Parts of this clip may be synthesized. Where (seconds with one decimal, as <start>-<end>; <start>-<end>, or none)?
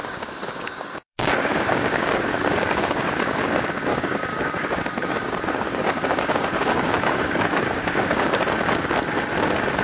0.0-3.5; 3.9-8.4